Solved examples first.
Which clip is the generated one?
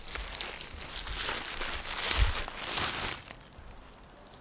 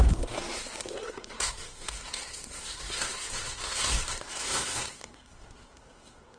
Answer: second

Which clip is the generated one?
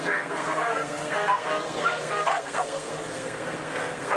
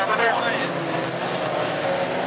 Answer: first